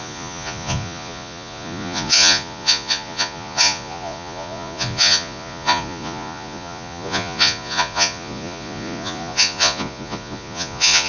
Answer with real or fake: fake